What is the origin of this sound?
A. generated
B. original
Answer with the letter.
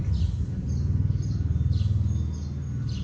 B